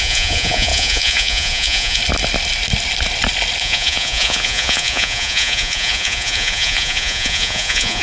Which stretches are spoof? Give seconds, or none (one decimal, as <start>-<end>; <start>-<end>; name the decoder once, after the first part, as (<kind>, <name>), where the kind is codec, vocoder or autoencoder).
0.0-2.0 (vocoder, Vocos); 3.6-8.0